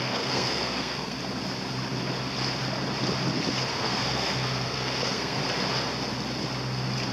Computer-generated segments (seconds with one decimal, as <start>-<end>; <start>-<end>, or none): 0.0-1.2; 3.7-5.4